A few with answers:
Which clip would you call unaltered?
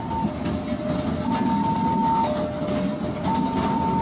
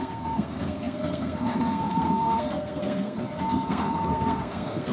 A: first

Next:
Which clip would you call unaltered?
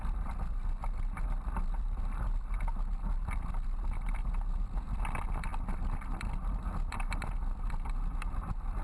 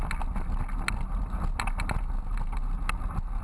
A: second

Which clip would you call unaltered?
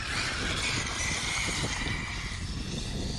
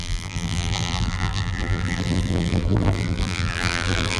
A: first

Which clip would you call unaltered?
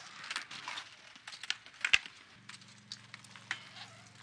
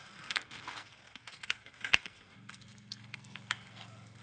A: first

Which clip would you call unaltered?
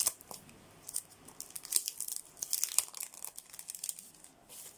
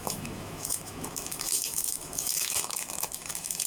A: first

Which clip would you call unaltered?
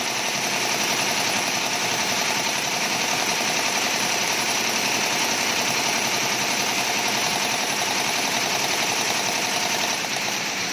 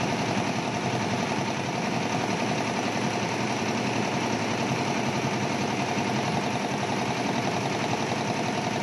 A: second